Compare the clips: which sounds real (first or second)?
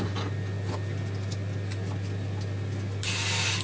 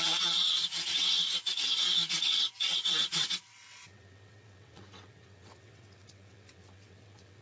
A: first